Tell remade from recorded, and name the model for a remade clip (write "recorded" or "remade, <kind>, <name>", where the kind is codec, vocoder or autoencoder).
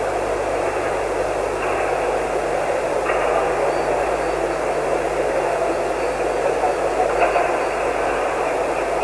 recorded